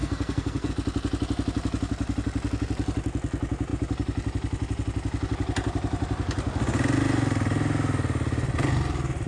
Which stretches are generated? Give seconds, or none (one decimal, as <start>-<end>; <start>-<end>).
0.0-0.7